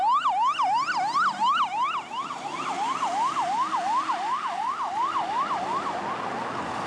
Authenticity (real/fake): real